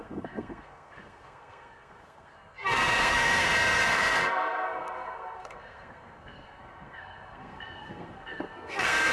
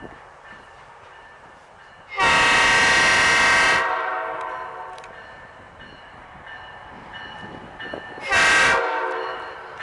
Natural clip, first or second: second